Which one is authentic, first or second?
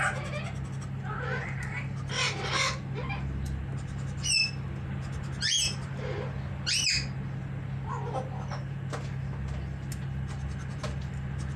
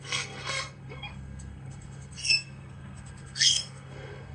first